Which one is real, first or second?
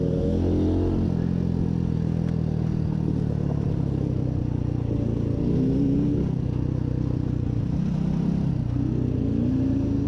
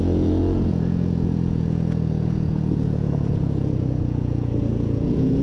first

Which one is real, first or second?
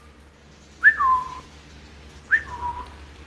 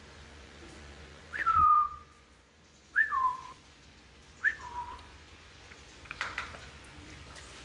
first